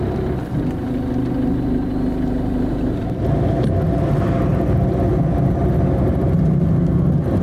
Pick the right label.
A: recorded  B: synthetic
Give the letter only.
A